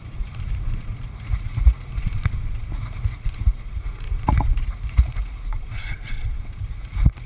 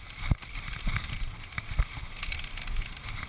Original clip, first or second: second